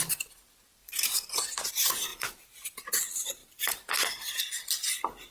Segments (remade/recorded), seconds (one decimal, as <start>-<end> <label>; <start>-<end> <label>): 0.0-0.8 recorded; 0.8-1.7 remade; 1.7-2.1 recorded; 2.1-2.8 remade; 2.8-3.4 recorded; 3.4-4.4 remade; 4.4-5.3 recorded